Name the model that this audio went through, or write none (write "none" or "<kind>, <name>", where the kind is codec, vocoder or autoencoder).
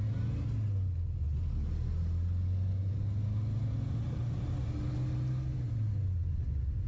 none